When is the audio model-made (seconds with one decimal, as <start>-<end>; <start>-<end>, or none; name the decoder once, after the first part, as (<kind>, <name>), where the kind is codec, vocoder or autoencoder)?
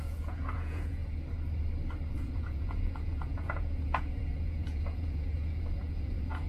0.0-1.0 (vocoder, Vocos); 2.1-6.5